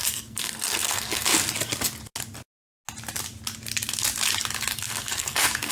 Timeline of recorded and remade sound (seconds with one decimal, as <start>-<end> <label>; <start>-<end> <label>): 0.0-1.3 remade; 1.3-4.7 recorded; 4.7-5.7 remade